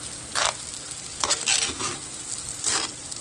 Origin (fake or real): real